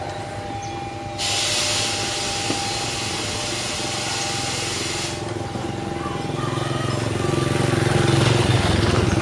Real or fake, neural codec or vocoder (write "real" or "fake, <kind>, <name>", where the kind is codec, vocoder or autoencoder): real